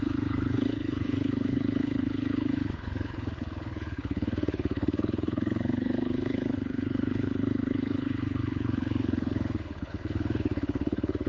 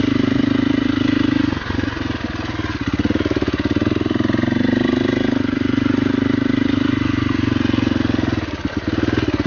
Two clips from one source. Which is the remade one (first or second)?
first